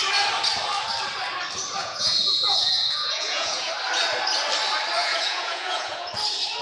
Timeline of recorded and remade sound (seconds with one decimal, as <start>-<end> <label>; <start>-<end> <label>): 0.0-1.8 recorded; 1.8-3.7 remade; 3.7-5.0 recorded; 5.0-6.1 remade; 6.1-6.6 recorded